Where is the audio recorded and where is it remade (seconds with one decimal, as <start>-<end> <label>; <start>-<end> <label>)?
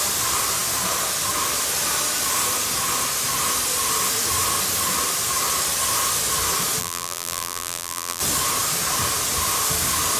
0.0-6.8 recorded; 6.8-8.2 remade; 8.2-10.2 recorded